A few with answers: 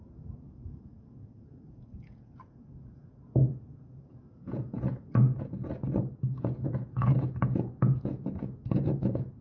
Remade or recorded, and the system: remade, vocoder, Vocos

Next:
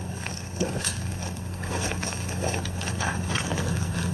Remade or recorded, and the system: remade, codec, SNAC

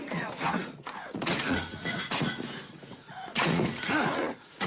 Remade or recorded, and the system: remade, vocoder, Vocos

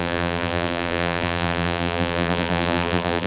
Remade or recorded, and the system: remade, vocoder, BigVGAN v2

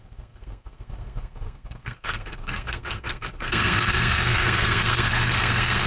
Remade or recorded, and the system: remade, codec, SNAC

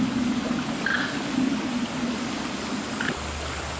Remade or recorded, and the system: recorded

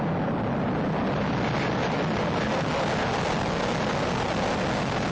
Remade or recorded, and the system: recorded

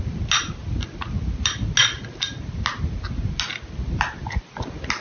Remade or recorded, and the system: recorded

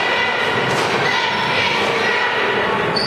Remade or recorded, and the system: recorded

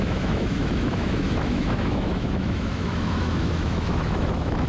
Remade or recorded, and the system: remade, autoencoder, DAC-VAE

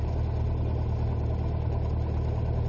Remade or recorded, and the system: recorded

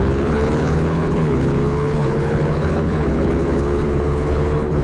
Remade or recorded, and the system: remade, codec, HILCodec